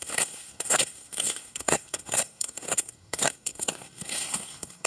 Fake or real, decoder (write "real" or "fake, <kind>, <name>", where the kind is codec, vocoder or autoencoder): fake, codec, SNAC